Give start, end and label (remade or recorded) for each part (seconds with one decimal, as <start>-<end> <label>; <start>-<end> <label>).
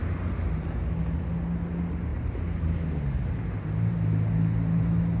0.0-5.2 recorded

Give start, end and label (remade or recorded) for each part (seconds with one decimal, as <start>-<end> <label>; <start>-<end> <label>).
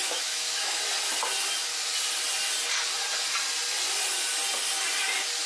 0.0-0.8 remade; 0.8-5.5 recorded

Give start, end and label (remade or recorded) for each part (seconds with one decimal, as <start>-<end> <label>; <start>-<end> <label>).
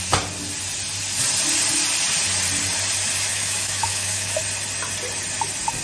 0.0-3.3 recorded; 3.3-4.4 remade; 4.4-5.8 recorded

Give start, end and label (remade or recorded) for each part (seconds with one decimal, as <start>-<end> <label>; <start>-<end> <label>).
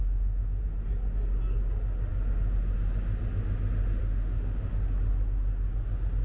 0.0-0.6 remade; 0.6-4.0 recorded; 4.0-4.7 remade; 4.7-6.2 recorded